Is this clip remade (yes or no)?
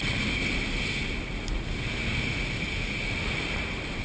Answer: no